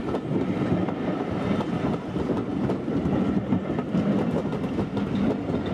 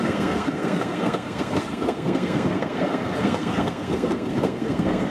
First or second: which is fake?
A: second